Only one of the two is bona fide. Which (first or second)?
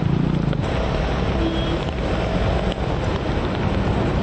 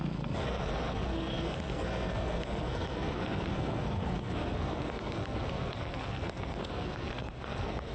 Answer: first